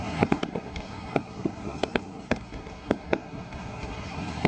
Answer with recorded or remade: remade